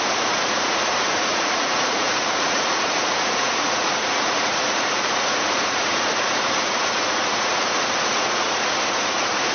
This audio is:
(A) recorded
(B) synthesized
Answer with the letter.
B